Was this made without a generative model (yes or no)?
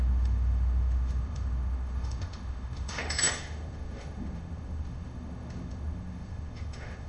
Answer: no